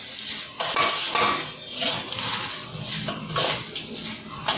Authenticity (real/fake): real